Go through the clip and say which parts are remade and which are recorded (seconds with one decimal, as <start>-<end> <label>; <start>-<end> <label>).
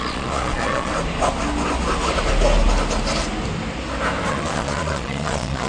0.0-0.9 remade; 0.9-4.3 recorded; 4.3-5.7 remade